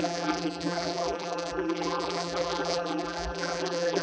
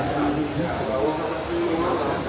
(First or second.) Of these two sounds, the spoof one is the first